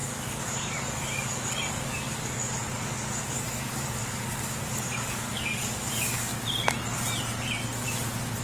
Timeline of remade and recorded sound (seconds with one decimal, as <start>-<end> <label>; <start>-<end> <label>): 0.0-6.3 remade; 6.3-8.4 recorded